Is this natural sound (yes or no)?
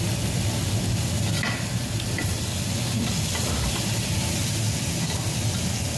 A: yes